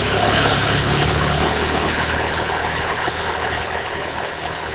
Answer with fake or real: fake